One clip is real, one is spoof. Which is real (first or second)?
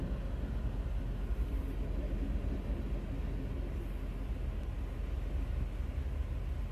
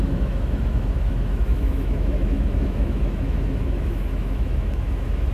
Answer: first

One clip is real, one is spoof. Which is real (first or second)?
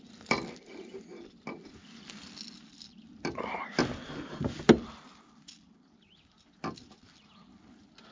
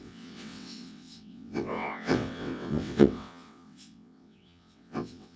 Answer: first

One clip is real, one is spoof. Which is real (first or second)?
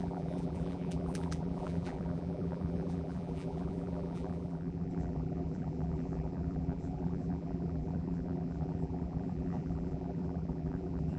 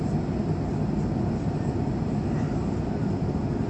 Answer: second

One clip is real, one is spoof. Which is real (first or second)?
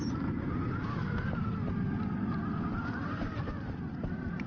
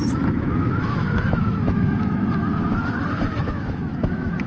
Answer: first